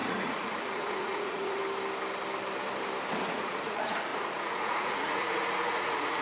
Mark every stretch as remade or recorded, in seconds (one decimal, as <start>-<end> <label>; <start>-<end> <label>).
0.0-1.6 remade; 1.6-3.3 recorded; 3.3-6.2 remade